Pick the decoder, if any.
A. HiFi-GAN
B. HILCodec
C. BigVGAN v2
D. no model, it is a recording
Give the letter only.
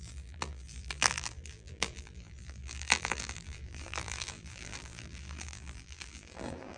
C